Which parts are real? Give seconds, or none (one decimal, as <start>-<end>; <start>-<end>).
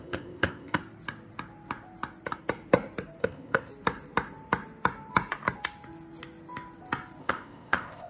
0.8-3.2; 3.7-7.2